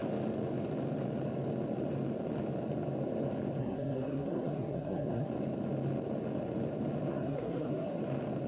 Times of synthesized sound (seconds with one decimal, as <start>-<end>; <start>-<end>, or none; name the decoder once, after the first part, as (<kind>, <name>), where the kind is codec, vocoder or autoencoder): 3.6-5.3 (codec, SNAC); 7.1-8.0